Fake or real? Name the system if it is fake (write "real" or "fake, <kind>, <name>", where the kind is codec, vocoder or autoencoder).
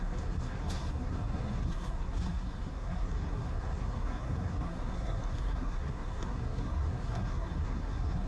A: fake, codec, SNAC